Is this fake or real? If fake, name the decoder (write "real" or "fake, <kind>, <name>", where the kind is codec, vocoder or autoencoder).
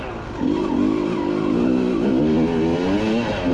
real